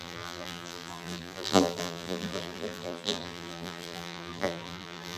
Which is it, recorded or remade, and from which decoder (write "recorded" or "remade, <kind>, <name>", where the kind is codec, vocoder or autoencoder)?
remade, vocoder, BigVGAN v2